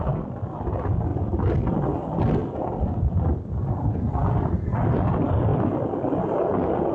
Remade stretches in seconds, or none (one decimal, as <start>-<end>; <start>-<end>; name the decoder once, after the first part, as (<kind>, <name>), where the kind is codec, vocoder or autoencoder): 1.1-1.7 (vocoder, BigVGAN v2); 2.4-3.5; 4.2-4.9; 5.5-6.3